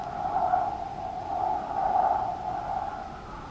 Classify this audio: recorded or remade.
recorded